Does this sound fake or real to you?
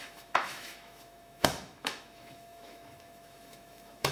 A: fake